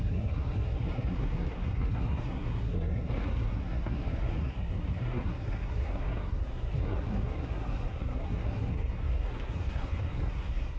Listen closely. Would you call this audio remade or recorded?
remade